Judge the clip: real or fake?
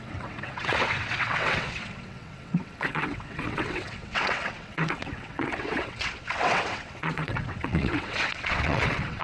fake